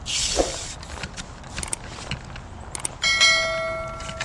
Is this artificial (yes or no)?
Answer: no